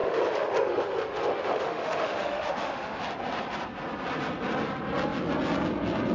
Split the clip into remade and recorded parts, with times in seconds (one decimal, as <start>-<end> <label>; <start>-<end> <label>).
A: 0.0-3.0 remade; 3.0-6.1 recorded